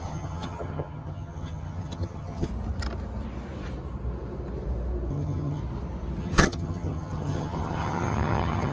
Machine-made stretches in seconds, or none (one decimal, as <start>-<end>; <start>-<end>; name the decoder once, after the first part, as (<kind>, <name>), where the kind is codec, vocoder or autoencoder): 0.0-2.5 (vocoder, HiFi-GAN); 5.1-5.6; 6.2-8.7